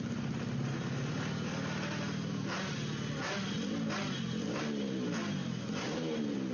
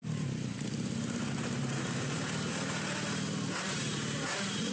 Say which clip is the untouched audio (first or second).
first